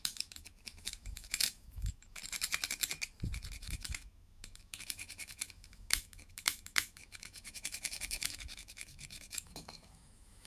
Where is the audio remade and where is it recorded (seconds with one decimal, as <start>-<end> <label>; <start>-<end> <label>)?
0.0-2.2 remade; 2.2-3.6 recorded; 3.6-10.5 remade